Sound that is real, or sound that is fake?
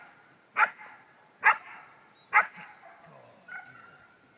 real